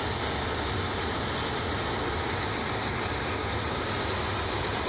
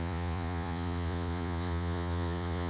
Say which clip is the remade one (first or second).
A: second